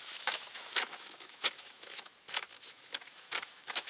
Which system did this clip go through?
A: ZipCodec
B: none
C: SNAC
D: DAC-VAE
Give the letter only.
D